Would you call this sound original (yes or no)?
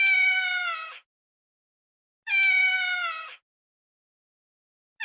yes